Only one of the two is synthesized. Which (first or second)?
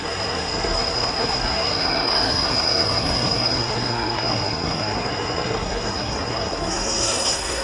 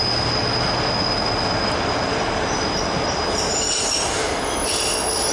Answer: first